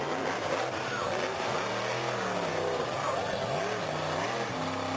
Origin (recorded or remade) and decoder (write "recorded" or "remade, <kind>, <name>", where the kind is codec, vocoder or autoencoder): recorded